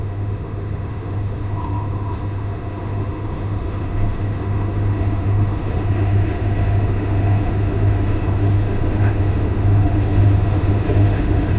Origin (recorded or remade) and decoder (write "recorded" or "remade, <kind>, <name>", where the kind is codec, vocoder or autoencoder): remade, autoencoder, DAC-VAE